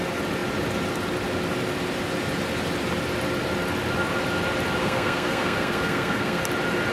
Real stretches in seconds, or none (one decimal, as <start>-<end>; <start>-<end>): 0.0-4.8; 6.4-6.9